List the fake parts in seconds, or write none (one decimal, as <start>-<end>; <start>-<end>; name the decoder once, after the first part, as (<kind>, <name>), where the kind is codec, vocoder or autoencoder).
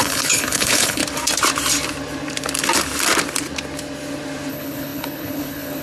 0.0-1.0 (codec, HILCodec); 4.5-5.8